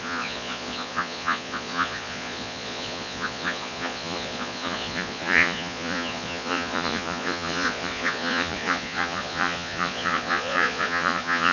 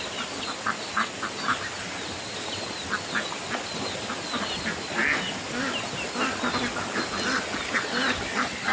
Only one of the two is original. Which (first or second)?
second